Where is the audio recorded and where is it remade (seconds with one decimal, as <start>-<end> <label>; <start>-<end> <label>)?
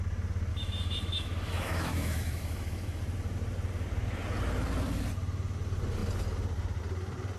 0.0-0.5 recorded; 0.5-3.0 remade; 3.0-7.4 recorded